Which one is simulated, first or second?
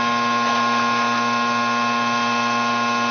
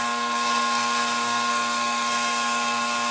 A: second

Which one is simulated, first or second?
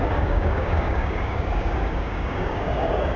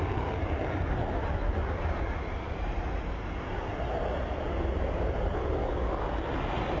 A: first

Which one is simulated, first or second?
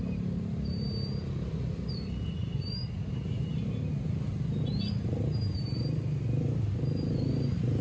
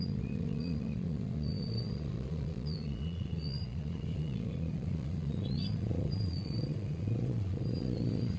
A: second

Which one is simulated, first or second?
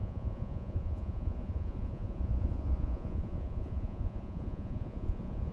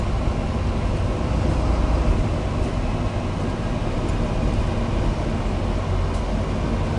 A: first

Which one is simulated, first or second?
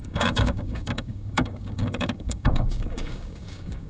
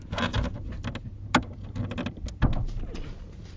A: first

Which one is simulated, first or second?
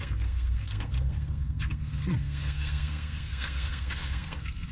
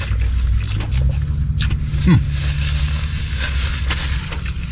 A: first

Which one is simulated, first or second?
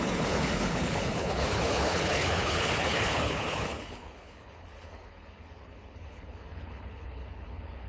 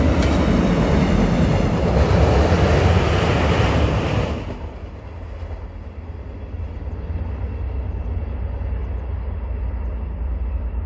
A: first